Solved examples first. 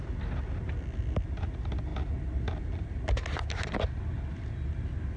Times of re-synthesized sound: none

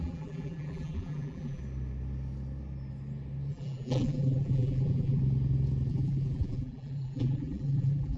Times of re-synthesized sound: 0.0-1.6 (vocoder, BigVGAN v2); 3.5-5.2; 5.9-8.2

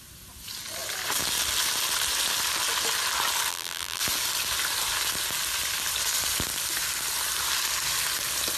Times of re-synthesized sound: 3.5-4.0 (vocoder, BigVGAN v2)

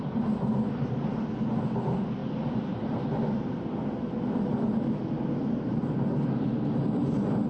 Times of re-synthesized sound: none

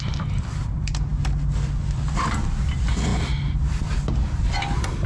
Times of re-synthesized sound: 0.0-5.1 (vocoder, BigVGAN v2)